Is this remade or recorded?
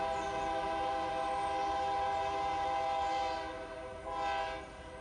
recorded